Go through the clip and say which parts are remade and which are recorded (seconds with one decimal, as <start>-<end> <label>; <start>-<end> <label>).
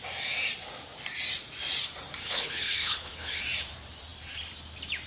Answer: 0.0-2.2 recorded; 2.2-3.4 remade; 3.4-5.1 recorded